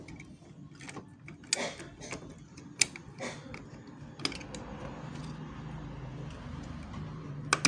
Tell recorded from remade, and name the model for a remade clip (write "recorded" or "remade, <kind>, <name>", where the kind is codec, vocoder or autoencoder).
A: recorded